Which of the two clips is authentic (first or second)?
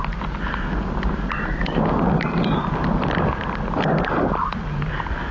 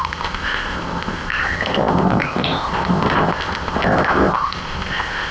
first